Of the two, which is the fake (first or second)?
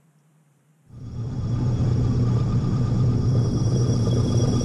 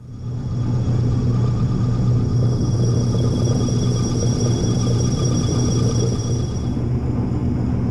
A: first